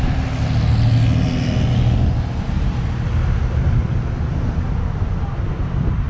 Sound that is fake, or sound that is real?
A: real